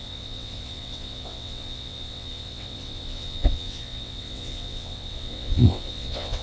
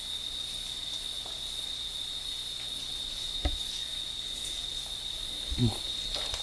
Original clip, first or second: second